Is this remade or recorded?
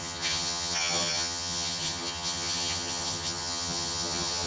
remade